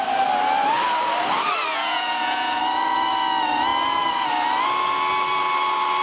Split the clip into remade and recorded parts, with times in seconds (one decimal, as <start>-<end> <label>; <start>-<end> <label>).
0.0-1.7 recorded; 1.7-2.6 remade; 2.6-6.0 recorded

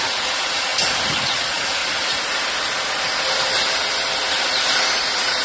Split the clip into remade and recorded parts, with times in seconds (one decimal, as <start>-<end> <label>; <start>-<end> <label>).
0.0-0.7 remade; 0.7-1.3 recorded; 1.3-1.8 remade; 1.8-5.0 recorded; 5.0-5.4 remade

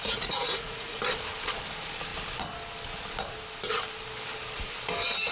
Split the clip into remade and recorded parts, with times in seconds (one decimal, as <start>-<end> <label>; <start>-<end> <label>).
0.0-1.0 remade; 1.0-5.3 recorded

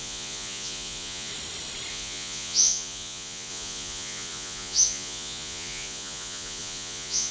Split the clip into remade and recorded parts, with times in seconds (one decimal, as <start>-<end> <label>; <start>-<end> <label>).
0.0-1.3 remade; 1.3-1.9 recorded; 1.9-7.3 remade